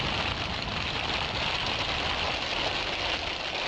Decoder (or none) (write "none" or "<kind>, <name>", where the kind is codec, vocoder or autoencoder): none